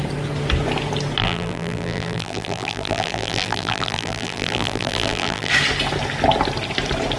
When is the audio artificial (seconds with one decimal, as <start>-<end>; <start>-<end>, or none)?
1.2-5.5